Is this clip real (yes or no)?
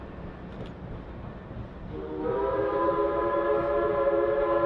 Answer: yes